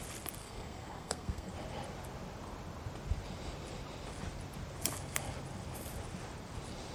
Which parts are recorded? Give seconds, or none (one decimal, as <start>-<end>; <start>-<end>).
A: 0.0-0.4; 1.5-6.9